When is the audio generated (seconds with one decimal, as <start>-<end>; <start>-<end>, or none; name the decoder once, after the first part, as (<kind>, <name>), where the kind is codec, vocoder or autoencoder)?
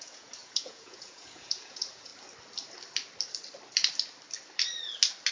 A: 0.0-2.1 (vocoder, Vocos)